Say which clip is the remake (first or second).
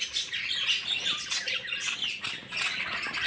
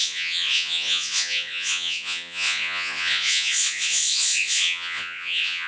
second